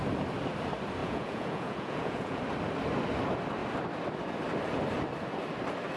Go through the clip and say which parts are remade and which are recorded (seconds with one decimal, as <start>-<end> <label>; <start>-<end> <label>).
0.0-1.0 recorded; 1.0-2.4 remade; 2.4-6.0 recorded